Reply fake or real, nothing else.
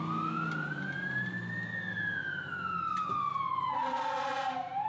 real